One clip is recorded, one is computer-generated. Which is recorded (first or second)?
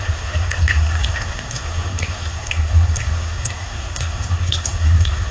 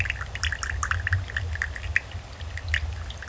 second